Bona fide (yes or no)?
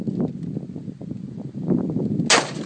yes